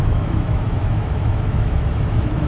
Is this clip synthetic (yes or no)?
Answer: yes